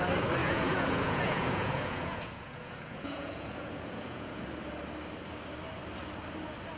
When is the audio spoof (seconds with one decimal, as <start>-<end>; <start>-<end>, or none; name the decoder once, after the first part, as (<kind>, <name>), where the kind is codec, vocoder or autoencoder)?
0.4-4.4 (vocoder, Vocos)